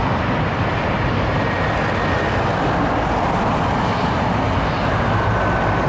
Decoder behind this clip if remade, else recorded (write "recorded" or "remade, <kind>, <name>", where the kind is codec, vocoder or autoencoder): recorded